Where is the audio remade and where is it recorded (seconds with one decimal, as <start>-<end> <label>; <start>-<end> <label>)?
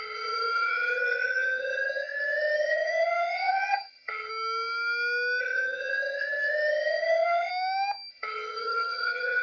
0.0-4.3 remade; 4.3-5.4 recorded; 5.4-7.5 remade; 7.5-8.1 recorded; 8.1-9.4 remade